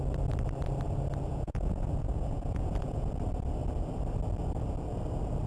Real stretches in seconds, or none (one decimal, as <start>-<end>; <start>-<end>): 0.0-1.3; 3.1-5.5